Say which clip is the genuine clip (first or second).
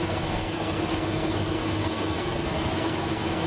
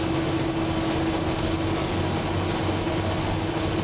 second